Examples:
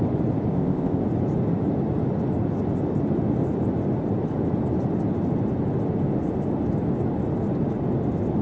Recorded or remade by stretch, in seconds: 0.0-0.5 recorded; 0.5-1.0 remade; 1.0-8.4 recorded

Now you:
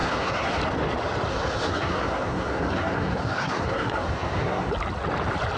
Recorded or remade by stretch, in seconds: 0.0-0.6 remade; 0.6-1.3 recorded; 1.3-4.7 remade; 4.7-5.6 recorded

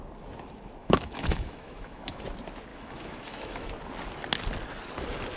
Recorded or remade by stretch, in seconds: 0.0-0.8 recorded; 0.8-2.2 remade; 2.2-2.7 recorded; 2.7-3.7 remade; 3.7-5.4 recorded

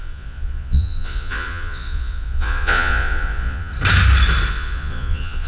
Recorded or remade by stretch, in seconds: 0.0-3.7 remade; 3.7-4.5 recorded; 4.5-5.5 remade

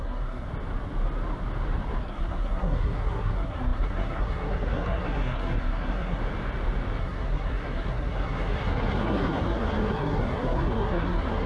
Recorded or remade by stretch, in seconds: 0.0-0.5 remade; 0.5-2.0 recorded; 2.0-6.2 remade; 6.2-7.0 recorded; 7.0-11.5 remade

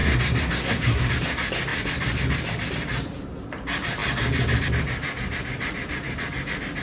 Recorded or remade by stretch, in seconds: 0.0-1.1 remade; 1.1-6.8 recorded

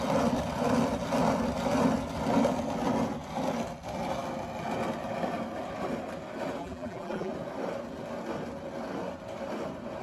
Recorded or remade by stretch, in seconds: 0.0-6.6 recorded; 6.6-7.3 remade; 7.3-10.0 recorded